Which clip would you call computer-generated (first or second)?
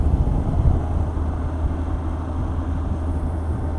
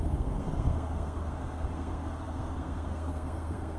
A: second